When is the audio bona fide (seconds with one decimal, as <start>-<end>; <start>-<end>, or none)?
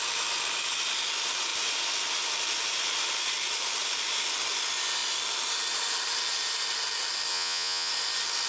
0.0-7.3; 7.9-8.5